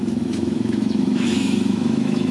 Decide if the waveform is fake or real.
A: fake